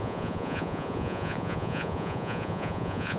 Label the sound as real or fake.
fake